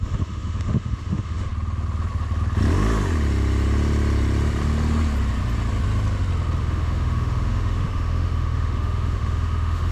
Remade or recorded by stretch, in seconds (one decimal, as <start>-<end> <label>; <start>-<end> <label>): 0.0-1.5 remade; 1.5-6.6 recorded; 6.6-9.9 remade